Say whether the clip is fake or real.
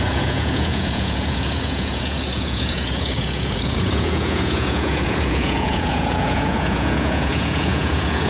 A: fake